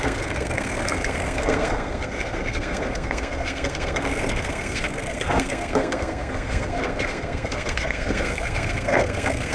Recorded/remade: remade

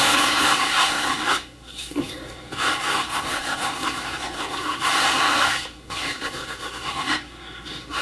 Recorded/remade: remade